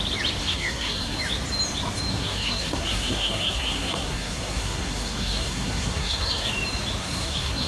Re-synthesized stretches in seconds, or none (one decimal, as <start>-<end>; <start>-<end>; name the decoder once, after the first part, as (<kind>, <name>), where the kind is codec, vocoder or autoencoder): 0.4-1.2 (codec, SNAC); 2.1-6.5; 7.0-7.7